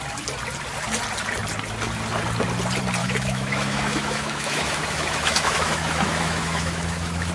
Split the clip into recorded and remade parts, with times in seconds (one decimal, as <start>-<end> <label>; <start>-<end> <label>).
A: 0.0-3.0 recorded; 3.0-7.3 remade